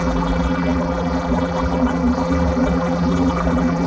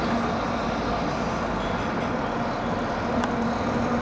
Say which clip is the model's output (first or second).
first